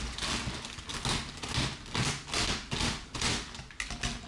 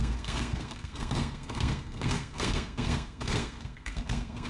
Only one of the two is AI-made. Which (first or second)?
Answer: second